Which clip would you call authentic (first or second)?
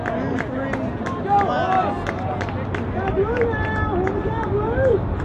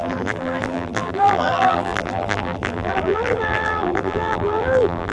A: first